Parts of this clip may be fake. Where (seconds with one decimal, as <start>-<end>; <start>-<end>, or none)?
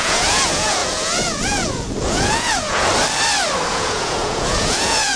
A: 0.0-2.9; 3.7-5.2